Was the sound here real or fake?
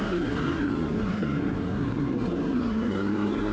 fake